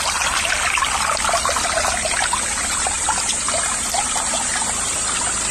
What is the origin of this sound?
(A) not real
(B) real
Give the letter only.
B